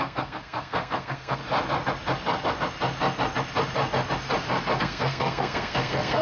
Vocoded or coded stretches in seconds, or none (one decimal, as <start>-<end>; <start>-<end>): 0.0-1.4; 4.8-6.2